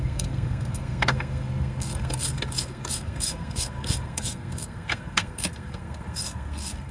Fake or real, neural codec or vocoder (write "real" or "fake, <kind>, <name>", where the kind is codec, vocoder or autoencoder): fake, codec, SNAC